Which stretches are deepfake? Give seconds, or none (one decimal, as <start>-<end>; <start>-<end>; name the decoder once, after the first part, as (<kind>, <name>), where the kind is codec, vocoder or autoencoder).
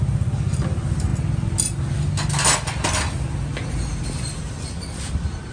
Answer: none